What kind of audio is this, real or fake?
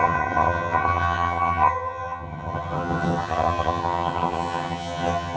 fake